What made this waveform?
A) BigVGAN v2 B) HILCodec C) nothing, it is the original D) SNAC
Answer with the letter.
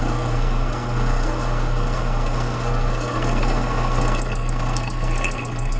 D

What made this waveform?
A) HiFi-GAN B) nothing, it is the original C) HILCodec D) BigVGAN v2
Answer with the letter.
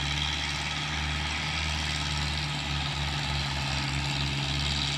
B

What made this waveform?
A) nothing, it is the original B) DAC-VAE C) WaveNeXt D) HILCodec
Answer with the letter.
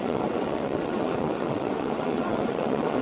C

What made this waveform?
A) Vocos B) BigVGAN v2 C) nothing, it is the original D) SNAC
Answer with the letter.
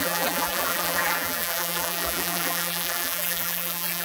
B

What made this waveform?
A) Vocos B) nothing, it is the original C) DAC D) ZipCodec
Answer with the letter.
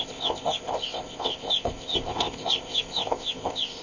D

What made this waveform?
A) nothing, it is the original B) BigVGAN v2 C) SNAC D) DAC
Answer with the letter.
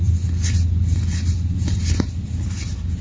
A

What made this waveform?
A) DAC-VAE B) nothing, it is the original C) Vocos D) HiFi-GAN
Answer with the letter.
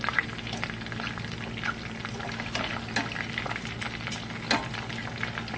B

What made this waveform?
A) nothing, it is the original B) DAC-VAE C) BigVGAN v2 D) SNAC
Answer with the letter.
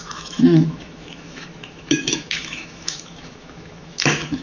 B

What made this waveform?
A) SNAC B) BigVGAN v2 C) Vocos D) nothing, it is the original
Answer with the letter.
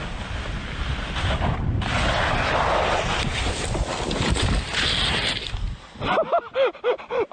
D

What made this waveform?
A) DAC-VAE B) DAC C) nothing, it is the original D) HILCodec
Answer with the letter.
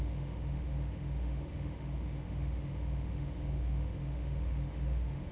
A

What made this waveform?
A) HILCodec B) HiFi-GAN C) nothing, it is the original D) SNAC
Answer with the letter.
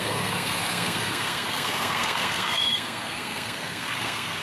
D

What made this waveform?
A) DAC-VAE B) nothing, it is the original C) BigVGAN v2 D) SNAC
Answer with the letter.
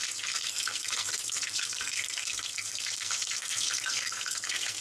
D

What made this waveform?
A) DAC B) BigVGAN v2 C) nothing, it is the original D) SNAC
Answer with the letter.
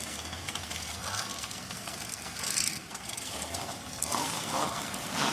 D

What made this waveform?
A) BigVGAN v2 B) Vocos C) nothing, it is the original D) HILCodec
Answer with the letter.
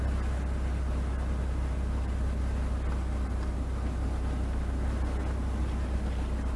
C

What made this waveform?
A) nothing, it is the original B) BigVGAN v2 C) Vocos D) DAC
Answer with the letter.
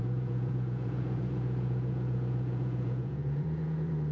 C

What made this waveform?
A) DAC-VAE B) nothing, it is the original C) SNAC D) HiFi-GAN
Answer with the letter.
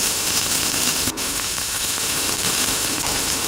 A